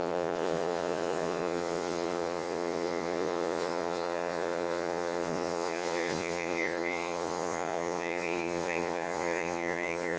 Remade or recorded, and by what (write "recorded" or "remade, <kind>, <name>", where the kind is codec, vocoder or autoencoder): remade, vocoder, Vocos